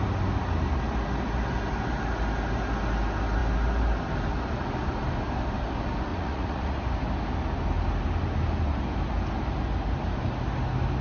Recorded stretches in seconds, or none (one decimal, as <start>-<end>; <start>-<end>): 0.0-6.1; 6.8-11.0